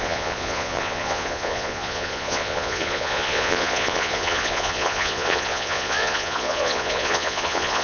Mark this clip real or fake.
fake